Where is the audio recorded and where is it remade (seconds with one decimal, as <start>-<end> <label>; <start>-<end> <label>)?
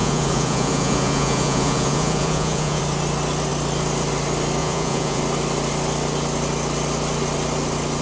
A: 0.0-2.8 remade; 2.8-4.6 recorded; 4.6-5.2 remade; 5.2-8.0 recorded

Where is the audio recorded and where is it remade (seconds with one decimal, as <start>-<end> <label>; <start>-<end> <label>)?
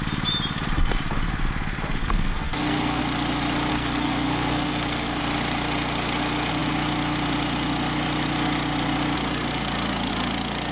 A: 0.0-2.0 recorded; 2.0-3.0 remade; 3.0-3.7 recorded; 3.7-5.2 remade; 5.2-10.7 recorded